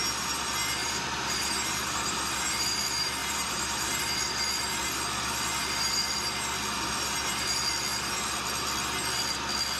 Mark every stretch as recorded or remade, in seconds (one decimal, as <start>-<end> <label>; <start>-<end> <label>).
0.0-0.8 recorded; 0.8-2.2 remade; 2.2-3.2 recorded; 3.2-4.0 remade; 4.0-9.8 recorded